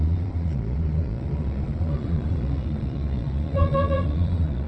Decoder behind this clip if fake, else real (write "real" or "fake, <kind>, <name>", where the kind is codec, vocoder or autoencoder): fake, vocoder, Vocos